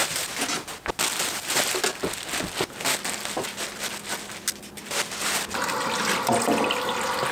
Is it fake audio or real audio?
real